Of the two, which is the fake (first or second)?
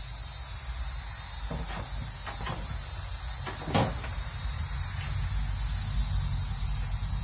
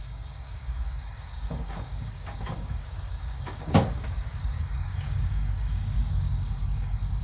second